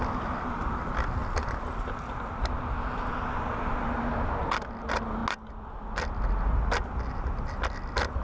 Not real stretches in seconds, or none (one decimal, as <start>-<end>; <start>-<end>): none